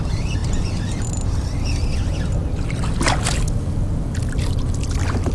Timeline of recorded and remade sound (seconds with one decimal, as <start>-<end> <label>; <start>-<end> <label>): 0.0-5.3 recorded